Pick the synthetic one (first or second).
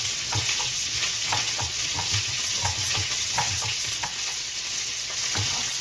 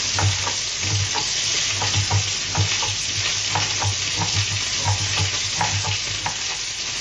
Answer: first